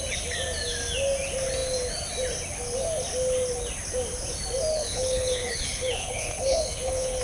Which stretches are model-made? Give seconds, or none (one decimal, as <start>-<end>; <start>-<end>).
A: 4.7-7.2